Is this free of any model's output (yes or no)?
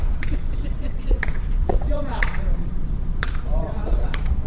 no